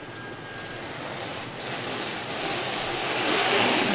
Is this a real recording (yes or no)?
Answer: yes